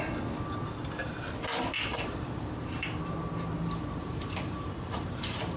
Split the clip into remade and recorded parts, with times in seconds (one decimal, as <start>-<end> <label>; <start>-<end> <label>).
0.0-1.9 recorded; 1.9-5.6 remade